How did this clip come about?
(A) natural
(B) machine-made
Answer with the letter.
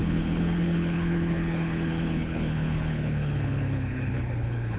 B